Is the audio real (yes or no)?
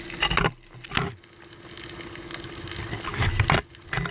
yes